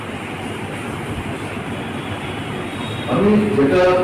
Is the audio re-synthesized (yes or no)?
no